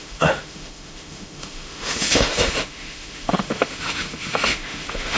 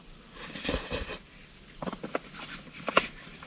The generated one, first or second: first